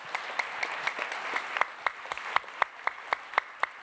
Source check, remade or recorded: recorded